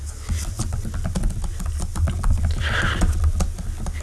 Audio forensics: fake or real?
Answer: real